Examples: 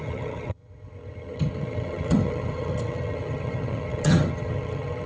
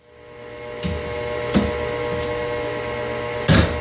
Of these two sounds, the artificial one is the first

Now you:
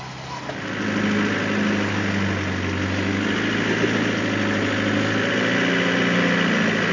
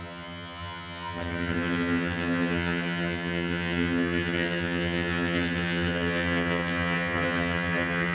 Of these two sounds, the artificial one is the second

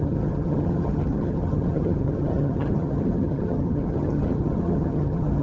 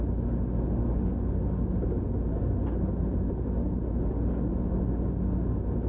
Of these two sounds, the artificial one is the first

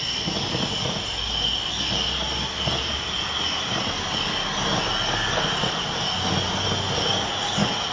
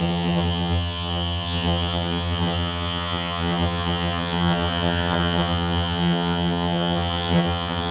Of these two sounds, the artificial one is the second